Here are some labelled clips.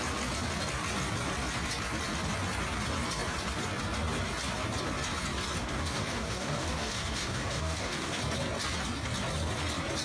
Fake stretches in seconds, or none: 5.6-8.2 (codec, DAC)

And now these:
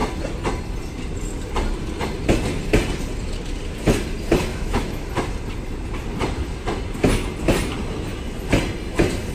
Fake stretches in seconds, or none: 4.5-5.1 (autoencoder, DAC-VAE)

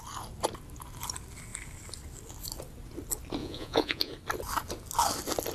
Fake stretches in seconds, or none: 3.4-4.1 (vocoder, Vocos)

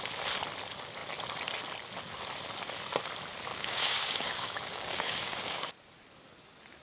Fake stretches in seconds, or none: 3.5-5.7 (codec, DAC)

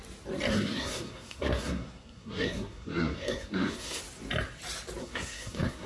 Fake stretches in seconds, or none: 0.5-4.0 (codec, SNAC); 5.0-5.9

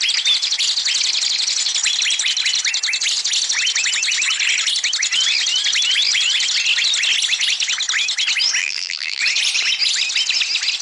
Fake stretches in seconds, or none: 8.6-9.2 (vocoder, BigVGAN v2)

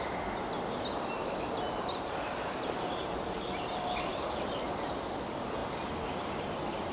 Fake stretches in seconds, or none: none

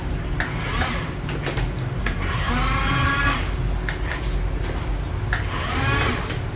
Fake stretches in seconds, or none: 2.0-2.5 (codec, SNAC)